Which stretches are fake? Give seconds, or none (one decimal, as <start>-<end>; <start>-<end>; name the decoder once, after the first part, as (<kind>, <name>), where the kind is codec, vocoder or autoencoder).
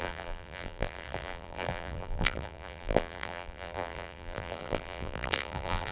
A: 0.0-5.9 (vocoder, BigVGAN v2)